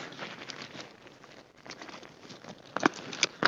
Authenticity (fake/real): real